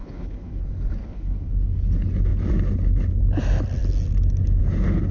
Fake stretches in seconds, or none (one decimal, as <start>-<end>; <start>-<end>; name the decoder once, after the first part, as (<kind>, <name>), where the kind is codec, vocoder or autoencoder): 0.0-0.6 (codec, HILCodec); 1.0-1.5